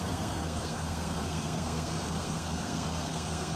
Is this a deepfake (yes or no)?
yes